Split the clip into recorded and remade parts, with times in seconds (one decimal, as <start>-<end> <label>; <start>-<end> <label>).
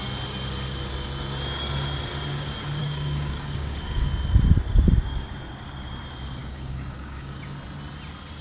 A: 0.0-2.8 recorded; 2.8-4.1 remade; 4.1-6.4 recorded; 6.4-7.4 remade; 7.4-8.4 recorded